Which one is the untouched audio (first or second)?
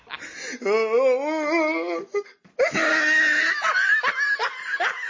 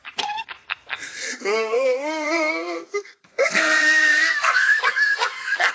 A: first